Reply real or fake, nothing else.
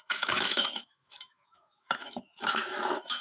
fake